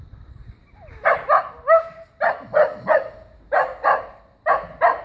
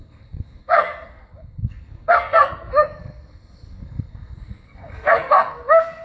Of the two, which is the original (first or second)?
first